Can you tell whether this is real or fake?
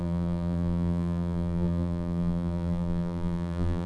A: fake